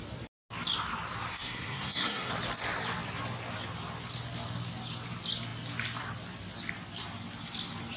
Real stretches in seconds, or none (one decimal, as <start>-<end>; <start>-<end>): 0.0-1.3; 2.3-8.0